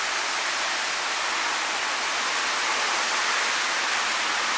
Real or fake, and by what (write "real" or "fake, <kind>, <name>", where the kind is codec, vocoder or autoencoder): real